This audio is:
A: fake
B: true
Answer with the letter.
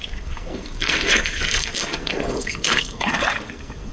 A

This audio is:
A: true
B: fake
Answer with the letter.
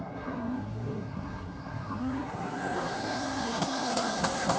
B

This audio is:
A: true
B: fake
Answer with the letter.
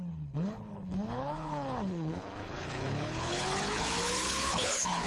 B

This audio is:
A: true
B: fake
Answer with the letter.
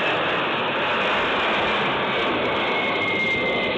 A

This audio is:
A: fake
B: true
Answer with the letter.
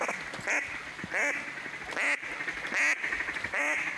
B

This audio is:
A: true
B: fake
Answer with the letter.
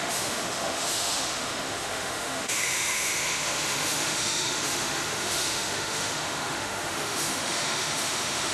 B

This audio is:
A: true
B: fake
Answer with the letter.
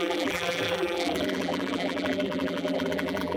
B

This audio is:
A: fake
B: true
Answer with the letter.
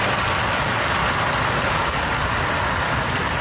B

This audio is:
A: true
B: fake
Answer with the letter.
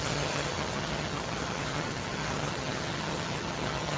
B